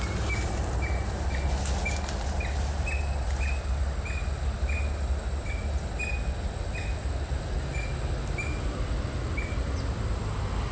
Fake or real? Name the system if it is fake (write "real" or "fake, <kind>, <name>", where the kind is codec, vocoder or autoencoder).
real